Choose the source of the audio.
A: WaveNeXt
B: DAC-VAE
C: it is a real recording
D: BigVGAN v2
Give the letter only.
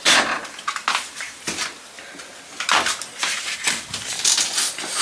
C